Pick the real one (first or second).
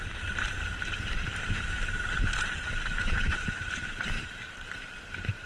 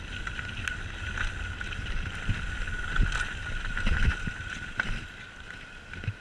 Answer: second